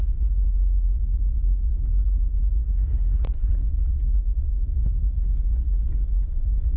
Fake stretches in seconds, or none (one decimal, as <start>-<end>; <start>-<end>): 2.6-3.5